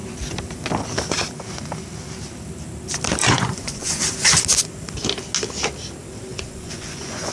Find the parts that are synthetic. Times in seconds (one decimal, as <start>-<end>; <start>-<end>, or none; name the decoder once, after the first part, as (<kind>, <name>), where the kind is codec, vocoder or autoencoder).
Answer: 3.2-4.0 (vocoder, Vocos); 6.3-7.3